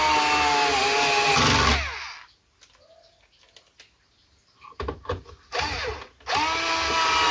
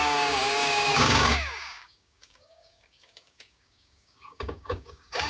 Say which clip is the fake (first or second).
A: second